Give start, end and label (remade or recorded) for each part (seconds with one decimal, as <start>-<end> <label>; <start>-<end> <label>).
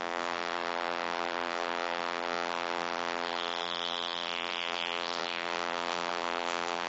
0.0-6.9 remade